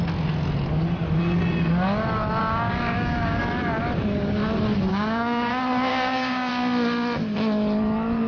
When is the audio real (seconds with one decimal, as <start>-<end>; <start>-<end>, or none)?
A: 0.0-2.4; 3.4-4.9; 5.5-5.9; 6.5-8.3